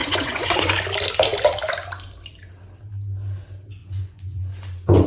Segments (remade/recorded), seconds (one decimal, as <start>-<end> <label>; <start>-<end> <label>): 0.0-0.7 remade; 0.7-3.8 recorded; 3.8-5.1 remade